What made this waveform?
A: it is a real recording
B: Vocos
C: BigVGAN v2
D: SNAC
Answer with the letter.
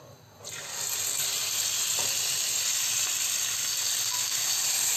A